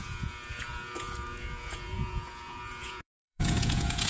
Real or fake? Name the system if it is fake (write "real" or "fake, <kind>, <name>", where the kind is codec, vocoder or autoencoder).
fake, vocoder, Vocos